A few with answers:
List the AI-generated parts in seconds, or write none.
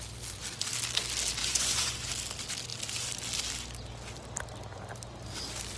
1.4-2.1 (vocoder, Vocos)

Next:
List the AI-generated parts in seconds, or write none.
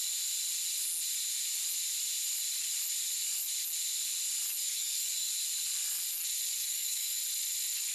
4.6-5.3 (codec, DAC); 6.5-7.2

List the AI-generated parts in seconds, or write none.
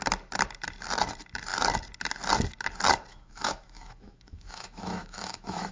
3.1-5.7 (autoencoder, DAC-VAE)